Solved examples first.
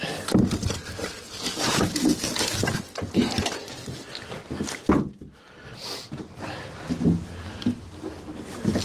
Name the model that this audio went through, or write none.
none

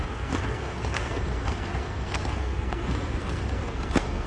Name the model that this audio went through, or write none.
codec, SNAC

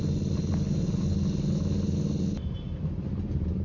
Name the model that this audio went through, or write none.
none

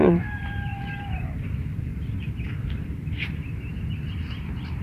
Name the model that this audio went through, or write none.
vocoder, BigVGAN v2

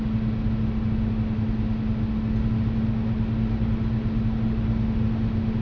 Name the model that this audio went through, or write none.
none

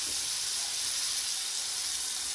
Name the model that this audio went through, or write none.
none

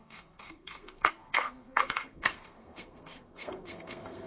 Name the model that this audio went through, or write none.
codec, SNAC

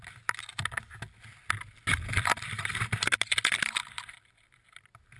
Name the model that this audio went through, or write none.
none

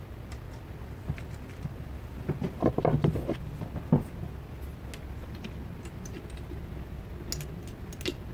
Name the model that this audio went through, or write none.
none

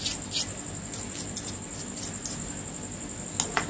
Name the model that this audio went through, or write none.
none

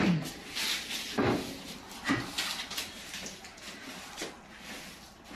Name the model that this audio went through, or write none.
none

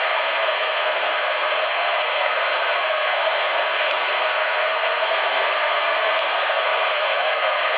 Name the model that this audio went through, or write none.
codec, SNAC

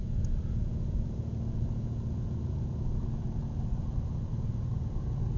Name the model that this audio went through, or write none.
vocoder, Vocos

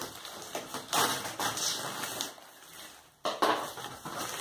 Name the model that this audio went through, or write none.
none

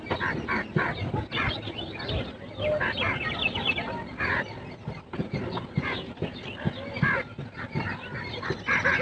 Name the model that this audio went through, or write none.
none